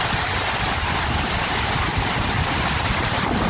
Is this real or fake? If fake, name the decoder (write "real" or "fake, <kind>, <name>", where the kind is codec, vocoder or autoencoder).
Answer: real